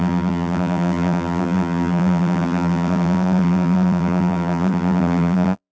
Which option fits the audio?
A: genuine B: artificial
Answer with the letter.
B